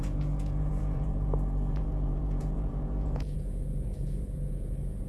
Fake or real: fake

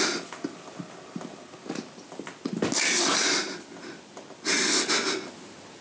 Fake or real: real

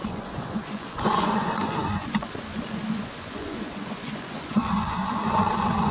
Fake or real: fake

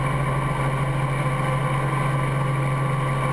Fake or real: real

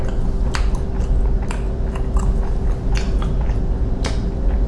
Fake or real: real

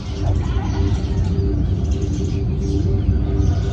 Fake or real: real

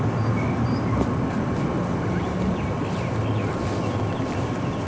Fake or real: real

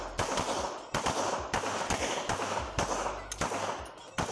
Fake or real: real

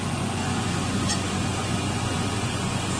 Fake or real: fake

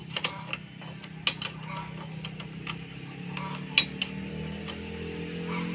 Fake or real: real